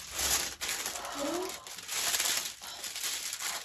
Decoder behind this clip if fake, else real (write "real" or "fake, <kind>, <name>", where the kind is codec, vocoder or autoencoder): real